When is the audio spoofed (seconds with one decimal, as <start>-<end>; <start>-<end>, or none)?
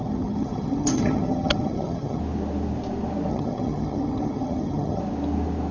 0.0-2.2; 3.3-5.0